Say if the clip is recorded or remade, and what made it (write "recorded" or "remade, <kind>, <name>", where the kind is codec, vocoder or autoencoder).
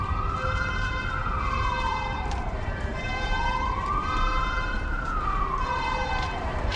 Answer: remade, vocoder, BigVGAN v2